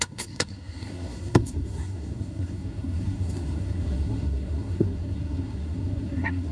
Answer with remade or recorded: remade